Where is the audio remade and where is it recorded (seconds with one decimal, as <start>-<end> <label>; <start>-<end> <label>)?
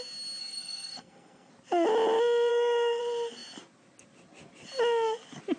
0.0-0.4 recorded; 0.4-1.5 remade; 1.5-2.5 recorded; 2.5-3.0 remade; 3.0-5.6 recorded